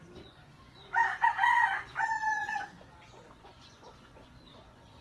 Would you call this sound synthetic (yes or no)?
yes